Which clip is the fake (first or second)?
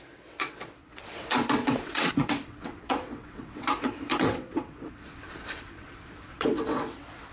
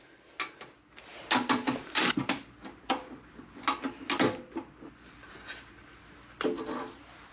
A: first